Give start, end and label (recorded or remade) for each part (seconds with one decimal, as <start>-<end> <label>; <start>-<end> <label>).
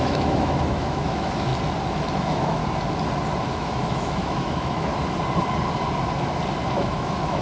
0.0-1.5 remade; 1.5-2.1 recorded; 2.1-2.6 remade; 2.6-3.5 recorded; 3.5-4.9 remade; 4.9-6.7 recorded; 6.7-7.4 remade